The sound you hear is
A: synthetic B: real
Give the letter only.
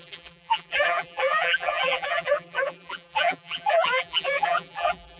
A